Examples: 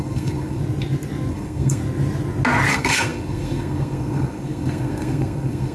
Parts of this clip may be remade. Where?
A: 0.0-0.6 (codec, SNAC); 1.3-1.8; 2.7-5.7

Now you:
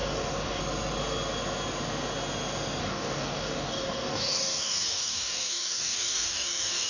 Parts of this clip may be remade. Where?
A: 0.0-0.6 (codec, DAC); 2.8-6.9